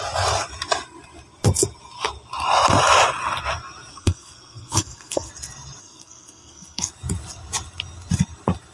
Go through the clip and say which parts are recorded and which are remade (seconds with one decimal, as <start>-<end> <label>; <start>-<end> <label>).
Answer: 0.0-3.9 recorded; 3.9-5.3 remade; 5.3-5.8 recorded; 5.8-6.9 remade; 6.9-8.7 recorded